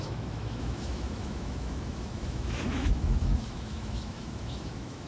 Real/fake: fake